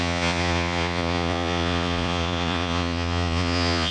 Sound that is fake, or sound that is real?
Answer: fake